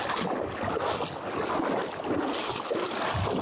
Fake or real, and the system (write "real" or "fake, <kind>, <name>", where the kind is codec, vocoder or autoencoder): real